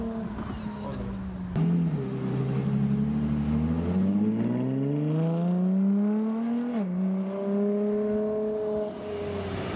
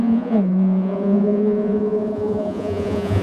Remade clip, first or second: second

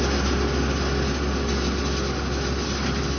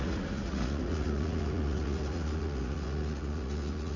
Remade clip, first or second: second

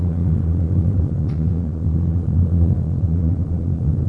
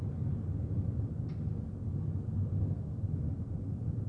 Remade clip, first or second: first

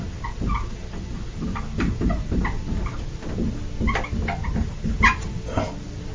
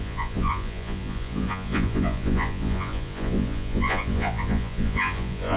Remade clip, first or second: second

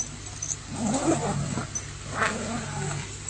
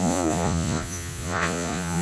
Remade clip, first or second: second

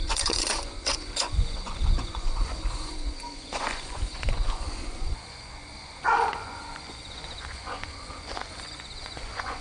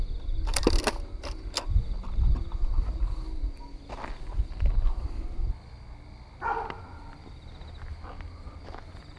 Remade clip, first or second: first